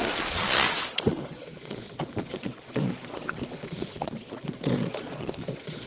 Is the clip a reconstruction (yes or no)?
yes